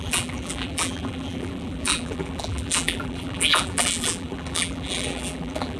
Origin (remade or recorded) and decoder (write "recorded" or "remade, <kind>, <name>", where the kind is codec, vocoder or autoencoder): remade, vocoder, BigVGAN v2